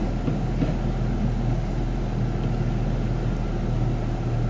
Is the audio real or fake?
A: real